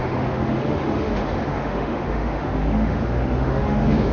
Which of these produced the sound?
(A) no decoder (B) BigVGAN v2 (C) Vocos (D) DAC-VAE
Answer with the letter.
D